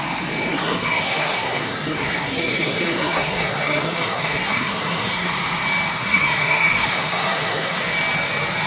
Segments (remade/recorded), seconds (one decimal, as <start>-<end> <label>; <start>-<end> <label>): 0.0-0.5 recorded; 0.5-5.3 remade; 5.3-5.9 recorded; 5.9-7.8 remade; 7.8-8.7 recorded